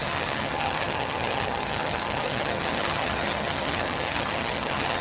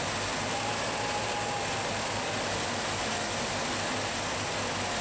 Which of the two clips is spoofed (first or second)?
first